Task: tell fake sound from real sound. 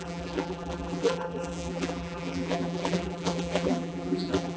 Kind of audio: fake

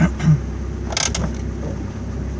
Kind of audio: real